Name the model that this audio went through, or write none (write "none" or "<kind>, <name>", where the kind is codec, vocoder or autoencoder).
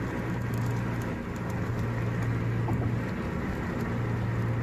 none